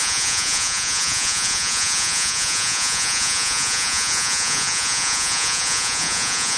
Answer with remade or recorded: remade